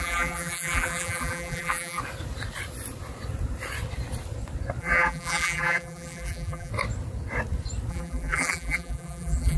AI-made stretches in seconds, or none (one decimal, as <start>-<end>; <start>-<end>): 0.0-2.0; 4.8-6.7; 7.9-9.6